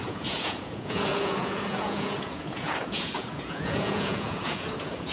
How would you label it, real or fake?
fake